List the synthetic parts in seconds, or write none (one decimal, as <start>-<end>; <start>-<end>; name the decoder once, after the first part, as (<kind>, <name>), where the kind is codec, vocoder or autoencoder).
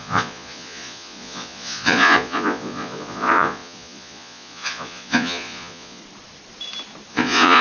0.0-6.0 (vocoder, Vocos); 7.1-7.6